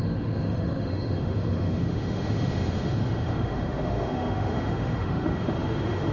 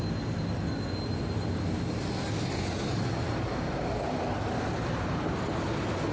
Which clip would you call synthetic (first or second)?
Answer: first